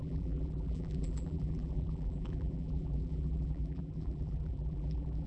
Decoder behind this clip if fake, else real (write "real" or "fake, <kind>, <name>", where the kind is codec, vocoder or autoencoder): fake, vocoder, BigVGAN v2